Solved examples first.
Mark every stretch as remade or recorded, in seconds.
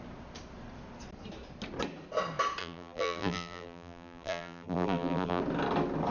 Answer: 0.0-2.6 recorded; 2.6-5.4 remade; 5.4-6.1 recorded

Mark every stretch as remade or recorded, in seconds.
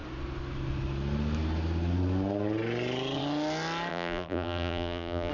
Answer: 0.0-3.9 recorded; 3.9-5.3 remade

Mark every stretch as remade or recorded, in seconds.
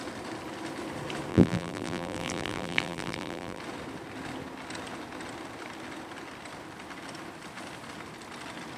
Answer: 0.0-1.3 recorded; 1.3-3.6 remade; 3.6-8.8 recorded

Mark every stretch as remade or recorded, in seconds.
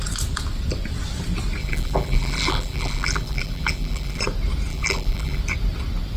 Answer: 0.0-1.6 recorded; 1.6-4.2 remade; 4.2-4.7 recorded; 4.7-5.4 remade; 5.4-6.2 recorded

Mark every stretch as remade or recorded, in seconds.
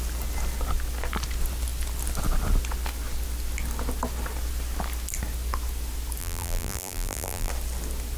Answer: 0.0-6.2 recorded; 6.2-7.5 remade; 7.5-8.2 recorded